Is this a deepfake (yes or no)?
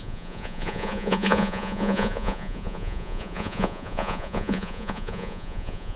yes